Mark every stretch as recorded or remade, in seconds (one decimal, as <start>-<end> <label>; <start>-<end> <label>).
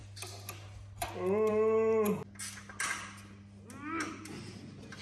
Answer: 0.0-5.0 recorded